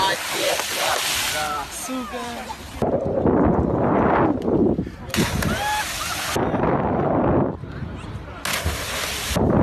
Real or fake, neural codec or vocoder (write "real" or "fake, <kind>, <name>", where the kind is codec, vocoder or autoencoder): real